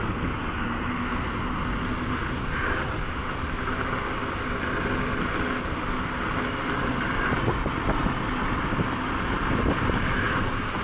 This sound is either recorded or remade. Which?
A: recorded